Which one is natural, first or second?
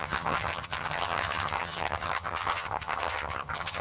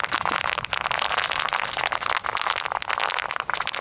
second